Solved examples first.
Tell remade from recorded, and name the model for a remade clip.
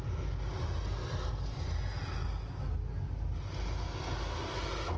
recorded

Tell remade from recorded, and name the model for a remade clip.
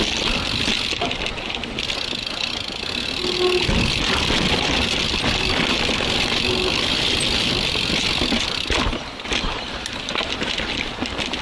recorded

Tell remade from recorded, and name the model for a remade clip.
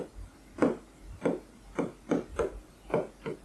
recorded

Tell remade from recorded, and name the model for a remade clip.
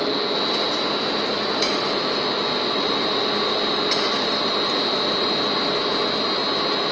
recorded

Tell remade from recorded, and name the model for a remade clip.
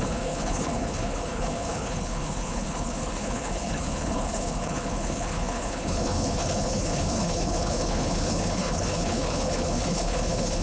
remade, codec, HILCodec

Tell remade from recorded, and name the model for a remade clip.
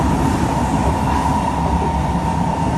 recorded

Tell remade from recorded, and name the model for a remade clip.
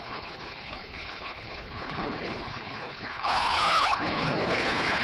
remade, codec, HILCodec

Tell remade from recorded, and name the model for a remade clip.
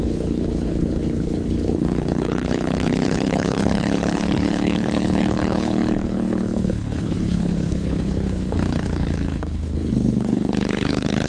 remade, codec, HILCodec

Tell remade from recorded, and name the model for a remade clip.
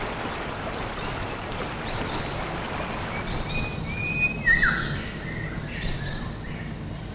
recorded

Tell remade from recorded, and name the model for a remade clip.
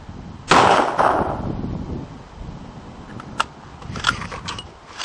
recorded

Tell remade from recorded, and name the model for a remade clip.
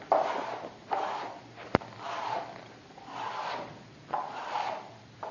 recorded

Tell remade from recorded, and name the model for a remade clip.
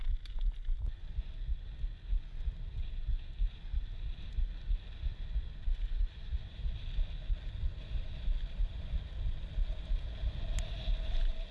recorded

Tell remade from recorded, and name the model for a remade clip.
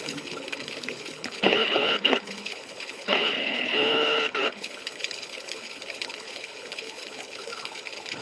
remade, codec, HILCodec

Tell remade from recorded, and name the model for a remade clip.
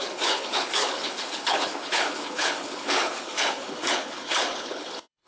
remade, codec, HILCodec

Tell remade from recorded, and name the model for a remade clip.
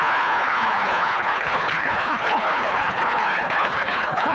remade, codec, HILCodec